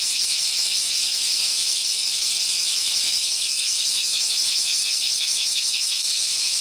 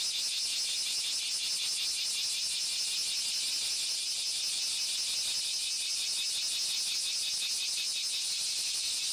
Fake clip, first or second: first